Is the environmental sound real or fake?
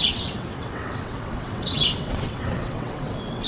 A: fake